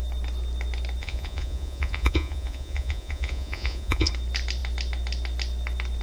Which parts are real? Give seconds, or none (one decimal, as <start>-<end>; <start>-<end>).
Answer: 0.0-1.0; 4.1-6.0